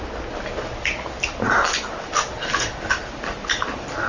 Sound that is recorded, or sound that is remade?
recorded